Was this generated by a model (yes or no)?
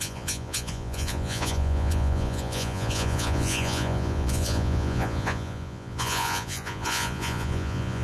yes